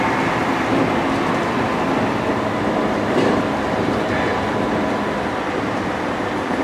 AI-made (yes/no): no